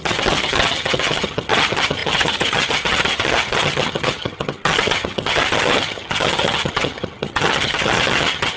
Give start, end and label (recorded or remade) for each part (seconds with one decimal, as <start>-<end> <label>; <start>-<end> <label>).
0.0-8.6 remade